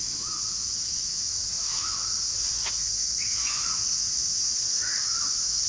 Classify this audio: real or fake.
fake